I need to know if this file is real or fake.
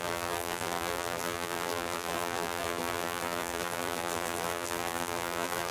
fake